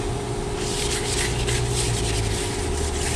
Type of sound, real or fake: real